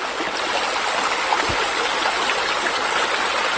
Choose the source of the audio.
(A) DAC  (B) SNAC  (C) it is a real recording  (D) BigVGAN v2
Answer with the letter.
C